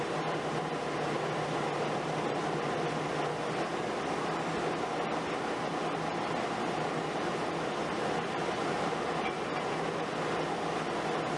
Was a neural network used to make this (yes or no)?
no